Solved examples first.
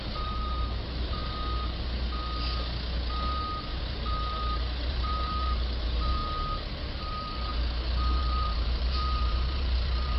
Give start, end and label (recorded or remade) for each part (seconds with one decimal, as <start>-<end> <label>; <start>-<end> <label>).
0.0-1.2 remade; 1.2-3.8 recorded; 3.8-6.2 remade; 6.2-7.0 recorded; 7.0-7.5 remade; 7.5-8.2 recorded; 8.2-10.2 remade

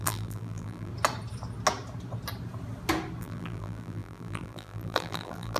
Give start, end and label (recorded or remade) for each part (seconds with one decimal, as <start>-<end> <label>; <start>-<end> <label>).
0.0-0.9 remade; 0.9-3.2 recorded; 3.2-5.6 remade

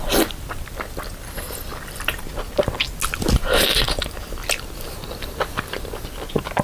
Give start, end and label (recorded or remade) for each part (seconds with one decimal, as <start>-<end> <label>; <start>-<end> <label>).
0.0-1.7 remade; 1.7-5.1 recorded; 5.1-6.6 remade

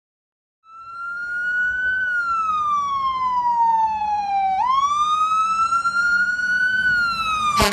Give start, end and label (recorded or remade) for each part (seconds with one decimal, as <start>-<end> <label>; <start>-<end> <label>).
0.0-3.7 recorded; 3.7-4.3 remade; 4.3-5.4 recorded; 5.4-6.8 remade; 6.8-7.7 recorded

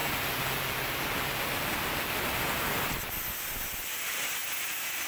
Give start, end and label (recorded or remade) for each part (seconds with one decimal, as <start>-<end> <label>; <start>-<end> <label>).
0.0-1.6 recorded; 1.6-4.4 remade; 4.4-5.1 recorded

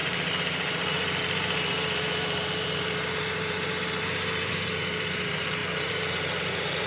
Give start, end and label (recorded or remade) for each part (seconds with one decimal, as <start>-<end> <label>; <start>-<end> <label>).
0.0-6.9 remade

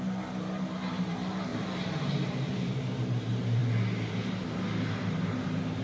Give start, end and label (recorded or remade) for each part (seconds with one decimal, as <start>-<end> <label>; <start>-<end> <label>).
0.0-1.5 recorded; 1.5-2.7 remade; 2.7-5.8 recorded

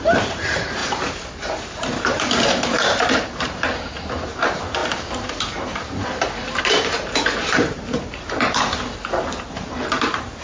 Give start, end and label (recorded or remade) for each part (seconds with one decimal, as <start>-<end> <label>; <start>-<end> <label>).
0.0-10.4 remade